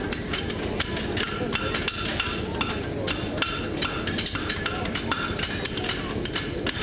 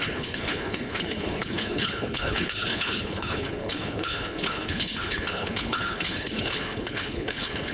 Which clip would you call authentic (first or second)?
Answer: first